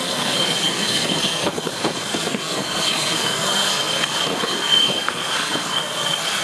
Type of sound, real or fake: fake